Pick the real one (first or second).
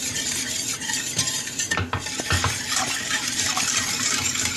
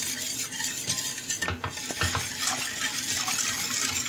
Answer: second